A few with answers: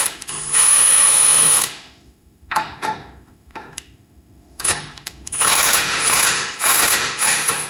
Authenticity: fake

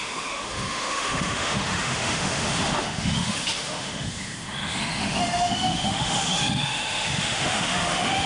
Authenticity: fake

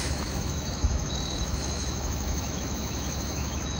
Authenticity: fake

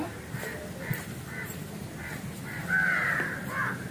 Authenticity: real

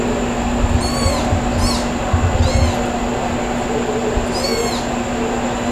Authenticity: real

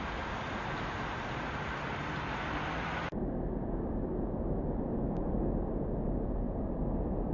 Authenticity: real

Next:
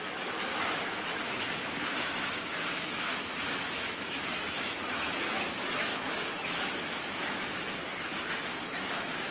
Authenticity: fake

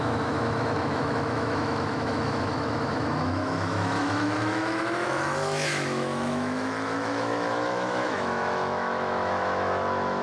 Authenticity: fake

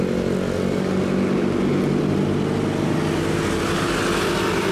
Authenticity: real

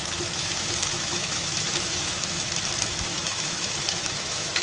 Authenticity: fake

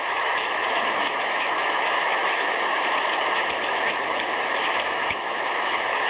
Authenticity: fake